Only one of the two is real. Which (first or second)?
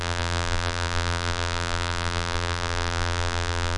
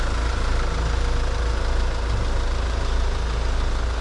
second